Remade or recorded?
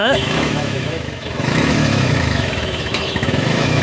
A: remade